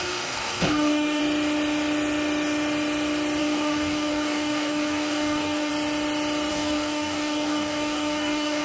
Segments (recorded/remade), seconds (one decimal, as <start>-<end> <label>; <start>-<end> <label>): 0.0-1.2 remade; 1.2-3.4 recorded; 3.4-5.7 remade; 5.7-6.5 recorded; 6.5-8.6 remade